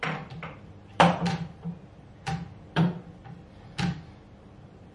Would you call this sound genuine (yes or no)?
no